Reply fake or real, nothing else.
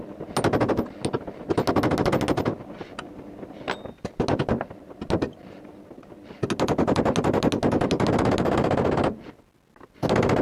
real